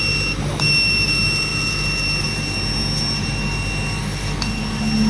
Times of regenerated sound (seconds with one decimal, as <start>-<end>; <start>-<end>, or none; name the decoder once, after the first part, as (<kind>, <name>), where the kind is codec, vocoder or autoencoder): none